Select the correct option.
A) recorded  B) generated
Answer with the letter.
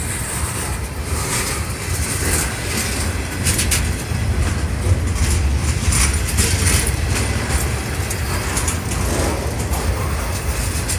A